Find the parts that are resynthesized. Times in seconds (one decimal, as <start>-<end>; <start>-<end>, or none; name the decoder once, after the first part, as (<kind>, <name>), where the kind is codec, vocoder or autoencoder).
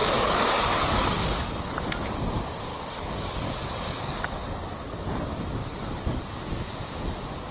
0.0-1.6 (codec, DAC); 2.7-4.3; 5.6-6.2